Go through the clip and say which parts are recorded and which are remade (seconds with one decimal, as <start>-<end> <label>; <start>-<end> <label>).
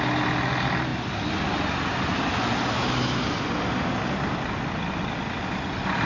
0.0-6.1 recorded